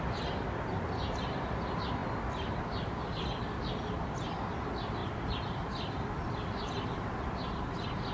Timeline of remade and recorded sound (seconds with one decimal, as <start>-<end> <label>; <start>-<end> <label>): 0.0-8.1 recorded